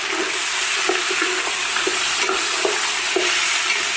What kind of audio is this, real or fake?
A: real